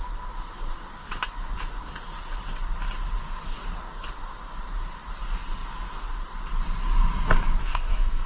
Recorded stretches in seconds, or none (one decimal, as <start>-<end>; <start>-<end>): 0.0-7.6